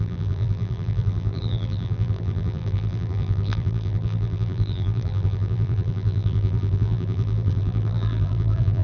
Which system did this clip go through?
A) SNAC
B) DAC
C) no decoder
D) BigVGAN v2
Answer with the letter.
D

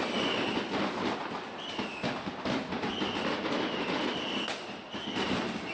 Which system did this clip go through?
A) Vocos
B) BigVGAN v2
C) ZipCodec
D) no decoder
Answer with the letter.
D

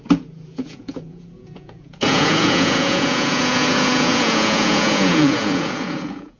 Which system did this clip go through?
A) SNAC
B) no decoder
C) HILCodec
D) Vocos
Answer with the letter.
D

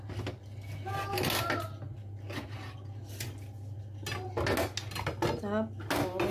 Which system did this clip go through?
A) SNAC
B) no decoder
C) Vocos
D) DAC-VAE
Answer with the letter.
B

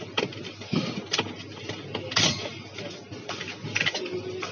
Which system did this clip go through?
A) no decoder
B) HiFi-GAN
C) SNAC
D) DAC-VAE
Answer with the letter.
A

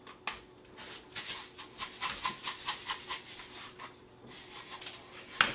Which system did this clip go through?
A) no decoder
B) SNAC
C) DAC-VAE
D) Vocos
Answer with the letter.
A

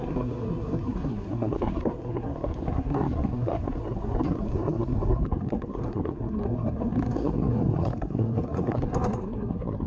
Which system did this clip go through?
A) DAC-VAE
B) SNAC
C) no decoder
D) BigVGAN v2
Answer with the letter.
B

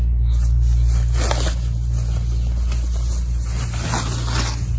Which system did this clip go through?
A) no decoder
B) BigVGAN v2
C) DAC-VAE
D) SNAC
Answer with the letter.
A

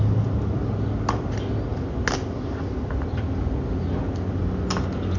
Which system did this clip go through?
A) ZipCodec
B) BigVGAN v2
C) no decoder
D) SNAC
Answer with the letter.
C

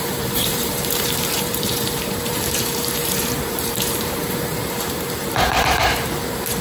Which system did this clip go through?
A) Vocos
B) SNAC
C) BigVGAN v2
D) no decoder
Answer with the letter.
C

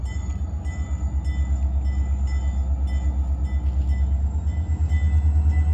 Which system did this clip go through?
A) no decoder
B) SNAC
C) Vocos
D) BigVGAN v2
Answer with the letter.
A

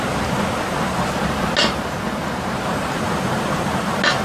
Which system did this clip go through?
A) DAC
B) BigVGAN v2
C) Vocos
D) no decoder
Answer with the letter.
D